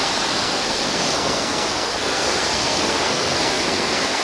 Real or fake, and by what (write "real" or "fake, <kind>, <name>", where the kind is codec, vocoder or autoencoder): fake, codec, SNAC